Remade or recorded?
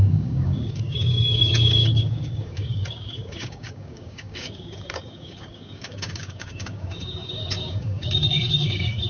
remade